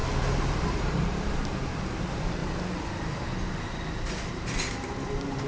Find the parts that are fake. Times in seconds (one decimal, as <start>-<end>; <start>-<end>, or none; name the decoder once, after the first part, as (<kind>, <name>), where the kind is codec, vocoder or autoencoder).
0.0-2.4 (vocoder, BigVGAN v2); 4.3-5.5